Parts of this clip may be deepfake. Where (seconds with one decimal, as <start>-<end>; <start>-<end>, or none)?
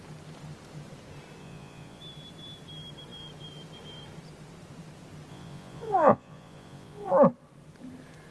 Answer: 1.4-2.0; 5.3-7.1